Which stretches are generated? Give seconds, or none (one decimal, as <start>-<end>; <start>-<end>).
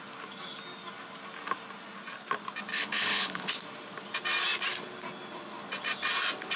2.7-3.5